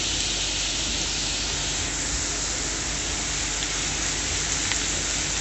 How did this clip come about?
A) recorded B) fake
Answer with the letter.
A